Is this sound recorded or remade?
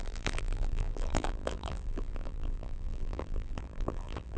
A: remade